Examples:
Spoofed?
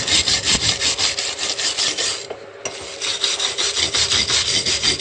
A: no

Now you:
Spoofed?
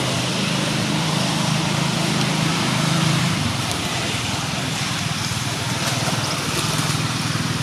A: yes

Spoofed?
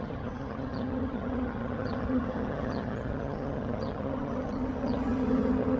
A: yes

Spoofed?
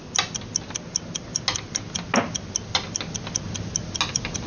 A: no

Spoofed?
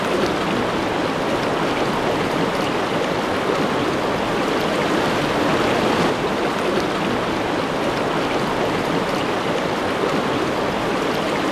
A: no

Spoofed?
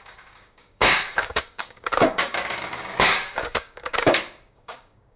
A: yes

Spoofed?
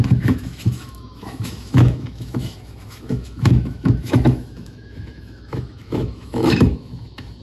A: yes